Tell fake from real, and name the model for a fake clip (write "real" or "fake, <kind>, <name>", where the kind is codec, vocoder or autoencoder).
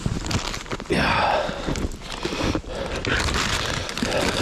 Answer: real